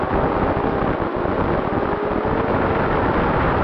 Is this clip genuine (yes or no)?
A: yes